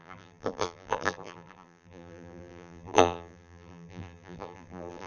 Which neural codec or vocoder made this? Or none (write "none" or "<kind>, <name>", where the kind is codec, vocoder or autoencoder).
vocoder, BigVGAN v2